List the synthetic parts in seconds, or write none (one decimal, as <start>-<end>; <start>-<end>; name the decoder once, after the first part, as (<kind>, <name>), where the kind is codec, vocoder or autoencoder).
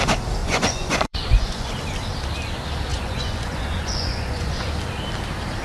0.4-1.7 (vocoder, Vocos); 2.9-4.7